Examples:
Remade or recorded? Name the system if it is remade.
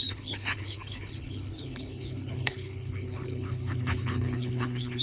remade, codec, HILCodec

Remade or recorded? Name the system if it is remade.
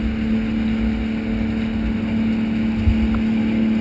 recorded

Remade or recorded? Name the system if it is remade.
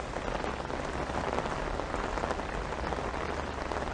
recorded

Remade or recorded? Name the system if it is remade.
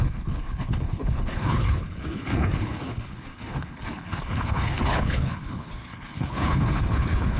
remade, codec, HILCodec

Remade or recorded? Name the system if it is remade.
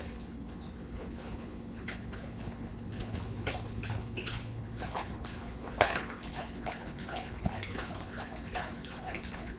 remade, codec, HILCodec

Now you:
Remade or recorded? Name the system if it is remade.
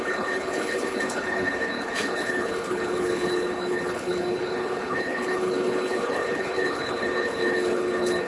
remade, codec, HILCodec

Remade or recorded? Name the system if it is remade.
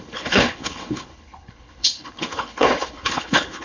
remade, codec, HILCodec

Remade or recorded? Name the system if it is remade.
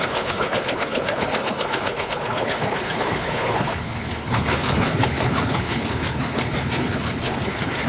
remade, codec, HILCodec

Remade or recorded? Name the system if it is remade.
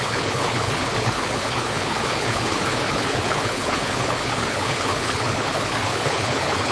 remade, codec, HILCodec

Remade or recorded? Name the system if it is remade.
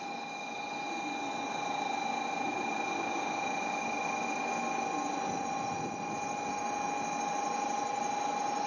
recorded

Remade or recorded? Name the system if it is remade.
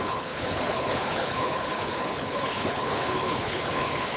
remade, codec, HILCodec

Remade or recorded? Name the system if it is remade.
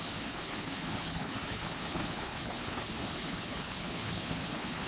remade, codec, HILCodec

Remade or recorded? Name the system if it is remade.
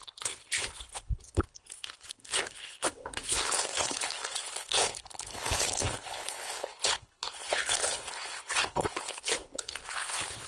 remade, codec, HILCodec